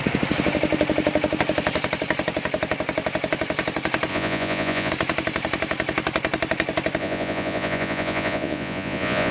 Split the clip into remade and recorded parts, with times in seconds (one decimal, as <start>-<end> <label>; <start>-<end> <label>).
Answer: 0.0-4.1 recorded; 4.1-4.9 remade; 4.9-7.0 recorded; 7.0-9.3 remade